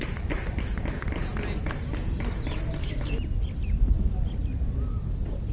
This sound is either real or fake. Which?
real